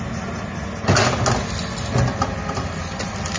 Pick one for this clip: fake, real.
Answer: real